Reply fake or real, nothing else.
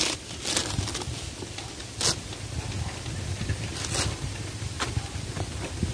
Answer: real